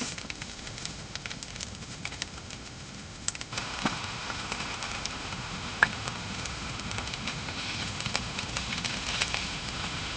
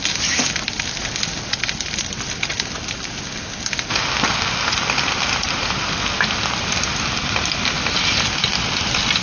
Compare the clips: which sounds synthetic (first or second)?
first